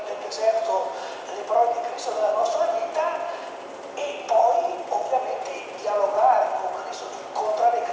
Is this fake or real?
real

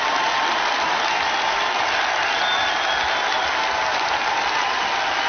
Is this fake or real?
real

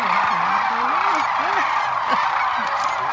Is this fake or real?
real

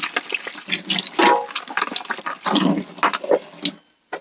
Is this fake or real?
real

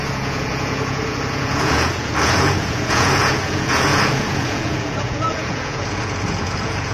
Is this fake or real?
fake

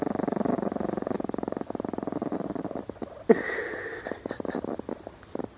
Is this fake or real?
real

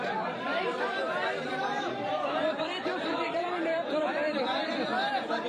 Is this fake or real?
fake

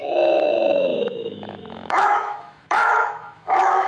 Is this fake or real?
fake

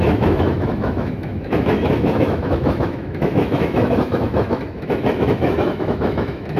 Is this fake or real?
fake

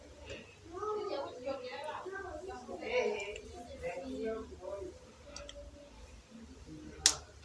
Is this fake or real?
real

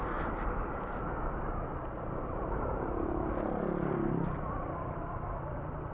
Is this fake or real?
real